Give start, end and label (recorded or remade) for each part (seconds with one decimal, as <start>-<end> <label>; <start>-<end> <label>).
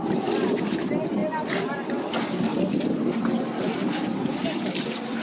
0.0-5.2 recorded